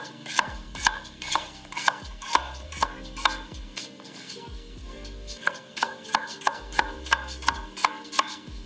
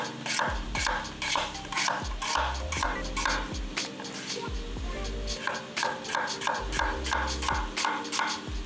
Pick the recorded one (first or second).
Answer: second